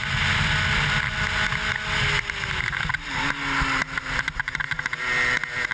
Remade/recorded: recorded